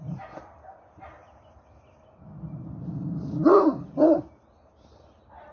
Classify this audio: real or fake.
real